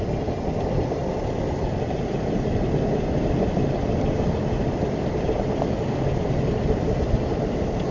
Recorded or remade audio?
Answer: recorded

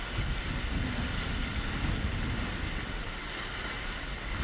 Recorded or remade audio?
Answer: recorded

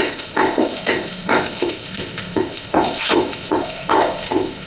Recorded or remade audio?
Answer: remade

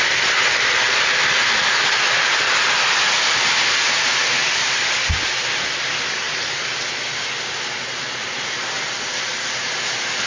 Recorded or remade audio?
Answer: recorded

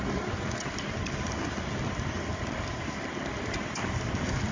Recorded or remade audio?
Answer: recorded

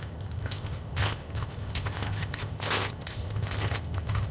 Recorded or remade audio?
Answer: remade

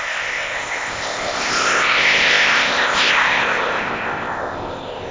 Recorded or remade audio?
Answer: remade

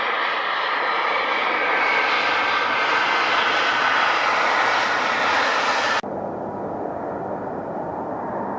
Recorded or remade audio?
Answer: recorded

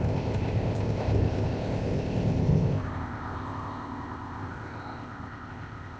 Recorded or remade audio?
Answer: remade